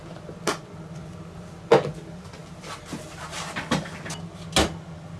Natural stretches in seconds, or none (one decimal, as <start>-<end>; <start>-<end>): 0.0-5.2